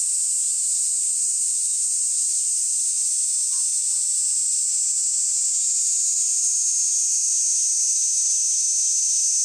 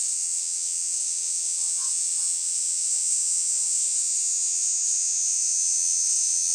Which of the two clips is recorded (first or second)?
first